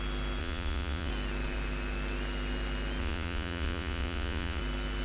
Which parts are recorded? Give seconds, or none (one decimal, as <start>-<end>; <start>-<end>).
0.0-0.4; 1.1-3.0; 4.6-5.0